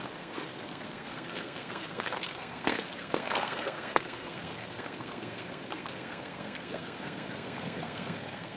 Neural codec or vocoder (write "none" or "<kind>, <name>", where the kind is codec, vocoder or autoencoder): codec, SNAC